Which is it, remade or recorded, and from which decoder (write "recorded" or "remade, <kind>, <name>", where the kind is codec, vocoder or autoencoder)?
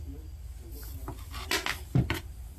recorded